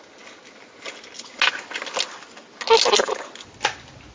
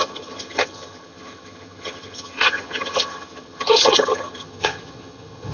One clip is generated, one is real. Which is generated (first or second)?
second